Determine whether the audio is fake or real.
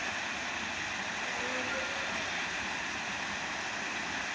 real